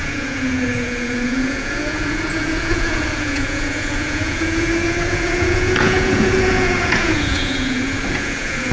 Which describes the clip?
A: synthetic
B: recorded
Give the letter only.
A